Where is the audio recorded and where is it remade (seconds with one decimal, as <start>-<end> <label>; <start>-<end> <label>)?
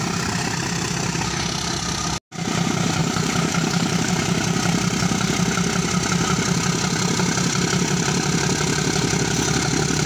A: 0.0-3.0 recorded; 3.0-4.1 remade; 4.1-10.1 recorded